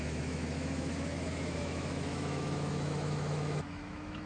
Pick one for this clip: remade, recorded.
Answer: remade